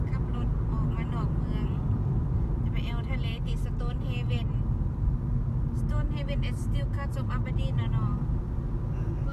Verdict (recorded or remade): recorded